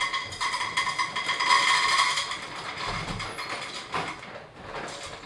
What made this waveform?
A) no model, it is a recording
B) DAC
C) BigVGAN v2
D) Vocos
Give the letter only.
A